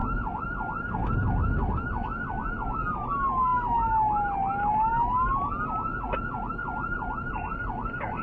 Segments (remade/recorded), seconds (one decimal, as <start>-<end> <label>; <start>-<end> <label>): 0.0-8.2 recorded